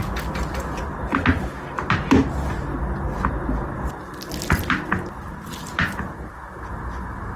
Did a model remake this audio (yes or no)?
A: no